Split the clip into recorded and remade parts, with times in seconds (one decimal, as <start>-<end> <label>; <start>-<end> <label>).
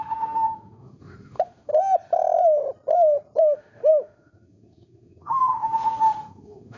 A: 0.0-1.7 remade; 1.7-3.4 recorded; 3.4-6.8 remade